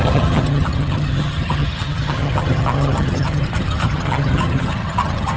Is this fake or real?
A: fake